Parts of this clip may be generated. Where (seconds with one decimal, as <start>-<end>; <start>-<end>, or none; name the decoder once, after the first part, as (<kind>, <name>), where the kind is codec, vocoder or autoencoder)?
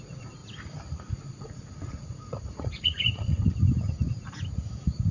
0.0-0.4 (vocoder, Vocos); 1.1-3.3